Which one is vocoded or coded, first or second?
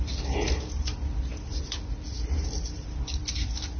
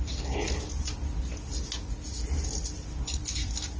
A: first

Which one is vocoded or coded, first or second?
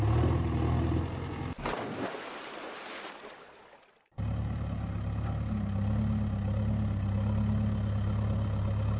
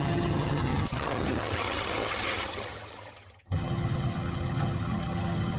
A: second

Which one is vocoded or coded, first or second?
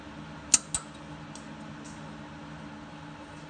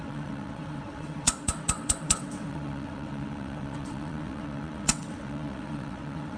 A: second